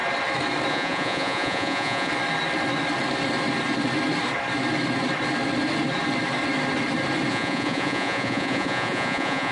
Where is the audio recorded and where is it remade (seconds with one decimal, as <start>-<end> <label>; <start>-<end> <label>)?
0.0-0.7 recorded; 0.7-2.1 remade; 2.1-7.3 recorded; 7.3-9.5 remade